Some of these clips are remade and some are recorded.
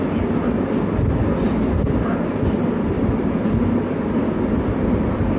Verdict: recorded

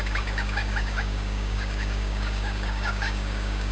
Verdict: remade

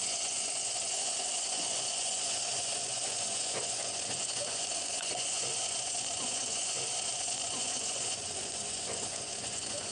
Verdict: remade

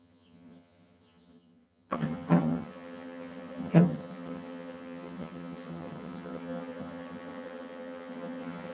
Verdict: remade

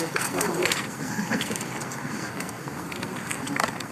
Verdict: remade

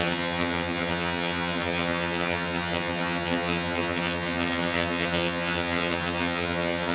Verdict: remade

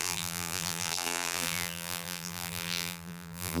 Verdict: remade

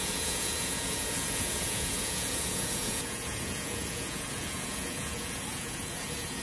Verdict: remade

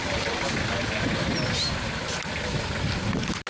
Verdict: recorded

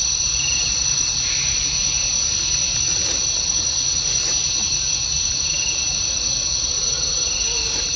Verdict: recorded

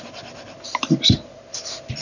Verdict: recorded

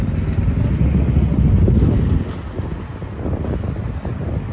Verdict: recorded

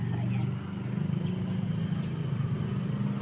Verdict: recorded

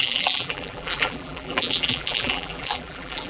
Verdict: remade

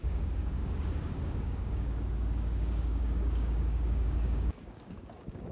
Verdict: remade